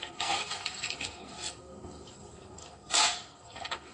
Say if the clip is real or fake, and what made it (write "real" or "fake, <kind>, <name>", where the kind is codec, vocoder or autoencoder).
fake, codec, SNAC